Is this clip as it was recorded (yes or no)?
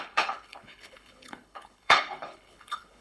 no